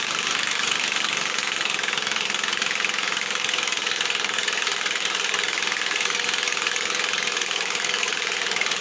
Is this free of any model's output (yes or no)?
no